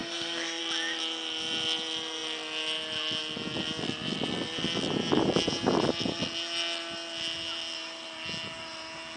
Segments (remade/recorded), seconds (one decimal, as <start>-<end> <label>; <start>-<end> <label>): 0.0-0.6 remade; 0.6-9.2 recorded